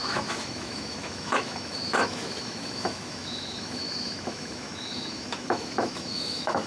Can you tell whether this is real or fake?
fake